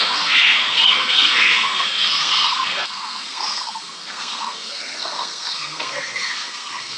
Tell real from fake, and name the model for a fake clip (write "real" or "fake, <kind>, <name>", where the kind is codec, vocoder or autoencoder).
fake, codec, SNAC